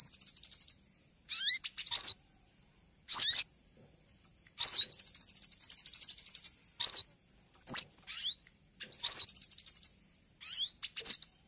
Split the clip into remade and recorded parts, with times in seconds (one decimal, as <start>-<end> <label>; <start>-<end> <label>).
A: 0.0-11.5 recorded